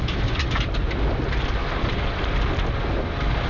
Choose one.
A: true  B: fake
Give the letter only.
A